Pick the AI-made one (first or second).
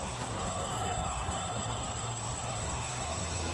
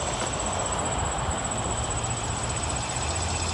first